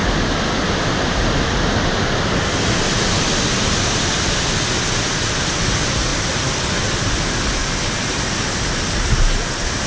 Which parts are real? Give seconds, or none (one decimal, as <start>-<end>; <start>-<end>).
0.0-6.1; 6.6-9.9